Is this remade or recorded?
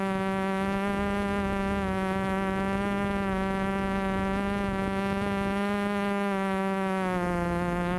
remade